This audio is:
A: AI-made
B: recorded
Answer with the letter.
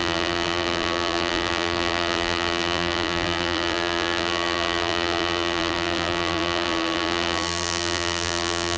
A